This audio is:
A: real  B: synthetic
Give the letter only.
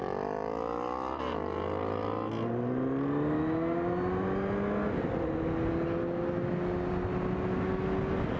A